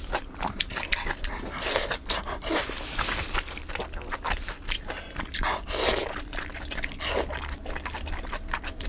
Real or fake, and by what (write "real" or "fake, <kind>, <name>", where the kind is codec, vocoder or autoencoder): real